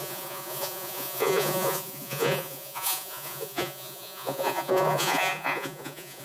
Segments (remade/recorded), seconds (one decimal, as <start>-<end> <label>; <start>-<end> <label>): 0.0-6.2 remade